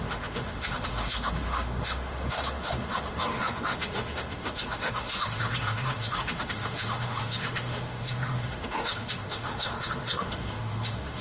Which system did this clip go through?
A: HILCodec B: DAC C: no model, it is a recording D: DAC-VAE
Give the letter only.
D